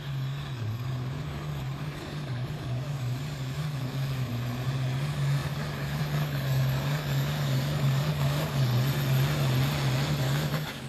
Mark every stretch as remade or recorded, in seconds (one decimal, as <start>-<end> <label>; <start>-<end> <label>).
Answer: 0.0-4.3 remade; 4.3-5.0 recorded; 5.0-8.7 remade; 8.7-10.2 recorded; 10.2-10.9 remade